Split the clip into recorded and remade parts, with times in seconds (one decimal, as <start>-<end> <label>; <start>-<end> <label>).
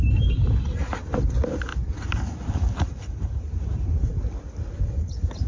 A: 0.0-1.7 recorded; 1.7-3.9 remade; 3.9-5.5 recorded